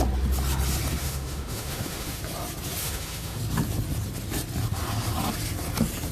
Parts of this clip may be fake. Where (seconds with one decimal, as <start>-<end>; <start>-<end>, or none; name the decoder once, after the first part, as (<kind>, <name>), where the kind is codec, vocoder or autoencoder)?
1.0-2.2 (autoencoder, DAC-VAE); 2.8-3.4